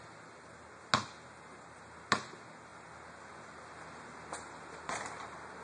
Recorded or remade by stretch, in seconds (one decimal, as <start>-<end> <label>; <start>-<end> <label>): 0.0-5.6 recorded